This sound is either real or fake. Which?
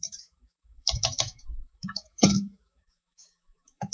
fake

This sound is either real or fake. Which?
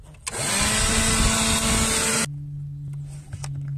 real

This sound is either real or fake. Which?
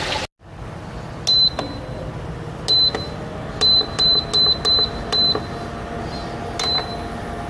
real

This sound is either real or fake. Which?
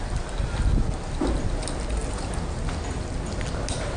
real